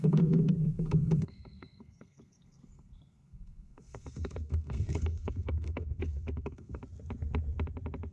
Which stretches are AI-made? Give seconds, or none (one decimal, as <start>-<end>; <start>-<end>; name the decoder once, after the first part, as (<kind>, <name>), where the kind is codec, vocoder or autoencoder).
0.0-6.8 (codec, SNAC)